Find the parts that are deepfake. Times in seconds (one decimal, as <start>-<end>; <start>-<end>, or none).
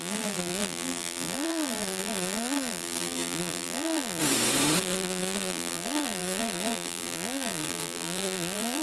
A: 0.0-4.2; 4.8-8.8